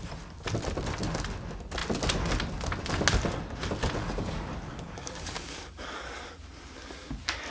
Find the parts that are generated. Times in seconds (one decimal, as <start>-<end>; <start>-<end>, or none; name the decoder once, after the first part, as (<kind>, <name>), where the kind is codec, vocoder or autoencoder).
4.0-6.2 (codec, DAC)